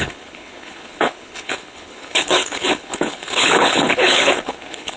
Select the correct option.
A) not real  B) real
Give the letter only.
A